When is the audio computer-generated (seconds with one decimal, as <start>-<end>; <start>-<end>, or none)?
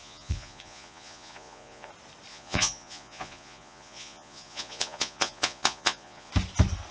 0.0-1.9; 2.3-6.3